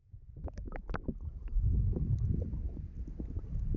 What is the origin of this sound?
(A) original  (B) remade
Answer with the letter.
A